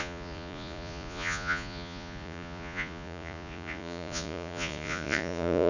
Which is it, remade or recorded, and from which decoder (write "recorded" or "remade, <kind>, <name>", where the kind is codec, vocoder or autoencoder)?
remade, vocoder, Vocos